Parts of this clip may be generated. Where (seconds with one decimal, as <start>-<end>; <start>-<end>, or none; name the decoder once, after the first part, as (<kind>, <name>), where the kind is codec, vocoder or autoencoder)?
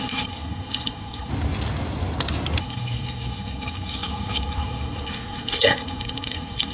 0.0-1.3 (codec, SNAC); 2.6-6.7